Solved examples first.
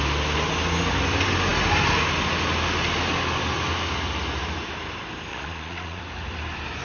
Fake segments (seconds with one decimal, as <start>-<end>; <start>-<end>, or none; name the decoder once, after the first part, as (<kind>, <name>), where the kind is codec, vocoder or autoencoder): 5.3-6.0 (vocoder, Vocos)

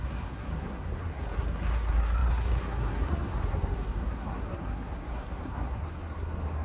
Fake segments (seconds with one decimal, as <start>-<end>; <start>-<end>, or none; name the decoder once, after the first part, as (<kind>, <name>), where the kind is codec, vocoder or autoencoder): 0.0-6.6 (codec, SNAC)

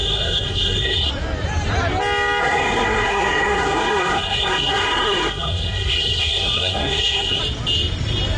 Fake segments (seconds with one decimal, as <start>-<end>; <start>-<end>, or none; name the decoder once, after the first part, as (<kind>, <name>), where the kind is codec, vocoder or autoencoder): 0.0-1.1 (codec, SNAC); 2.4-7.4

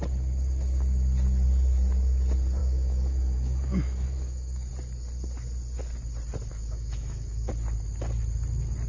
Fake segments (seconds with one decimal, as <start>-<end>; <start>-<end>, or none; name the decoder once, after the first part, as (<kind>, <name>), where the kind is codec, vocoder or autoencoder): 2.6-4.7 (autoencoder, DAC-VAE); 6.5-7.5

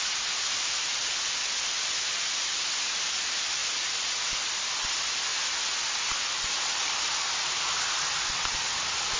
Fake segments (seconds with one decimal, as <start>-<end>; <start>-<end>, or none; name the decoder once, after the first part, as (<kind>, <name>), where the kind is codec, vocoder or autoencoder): 1.4-2.8 (vocoder, BigVGAN v2); 3.6-4.3

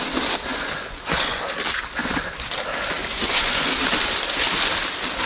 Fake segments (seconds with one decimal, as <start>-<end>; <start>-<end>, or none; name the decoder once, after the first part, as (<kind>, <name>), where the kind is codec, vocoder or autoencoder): 0.5-1.4 (vocoder, Vocos); 2.0-2.5; 3.0-3.7

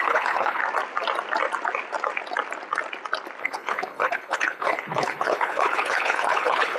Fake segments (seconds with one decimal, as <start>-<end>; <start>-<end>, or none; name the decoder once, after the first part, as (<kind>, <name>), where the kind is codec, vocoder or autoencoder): 0.0-0.6 (codec, HILCodec); 3.4-6.8

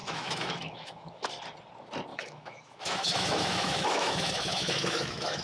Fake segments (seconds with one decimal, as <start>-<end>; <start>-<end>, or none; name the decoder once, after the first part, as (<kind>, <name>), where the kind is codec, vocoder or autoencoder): 0.0-1.3 (autoencoder, DAC-VAE); 2.1-5.4